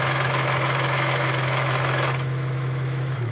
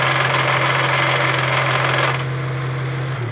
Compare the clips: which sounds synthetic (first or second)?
first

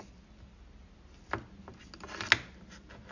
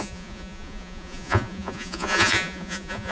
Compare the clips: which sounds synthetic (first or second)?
second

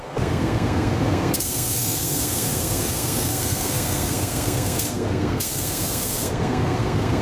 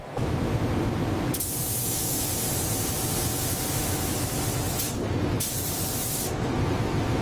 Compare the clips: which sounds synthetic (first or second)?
first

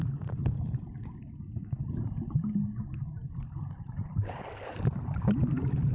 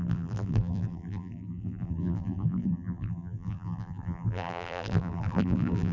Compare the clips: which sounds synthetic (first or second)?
second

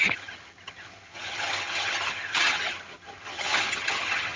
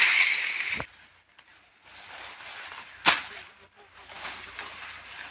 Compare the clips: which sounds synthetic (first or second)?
first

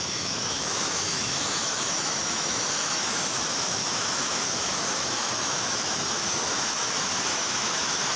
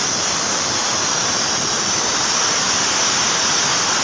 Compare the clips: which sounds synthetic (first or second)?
first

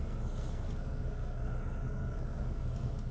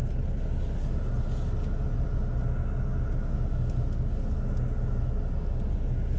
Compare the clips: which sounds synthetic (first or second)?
first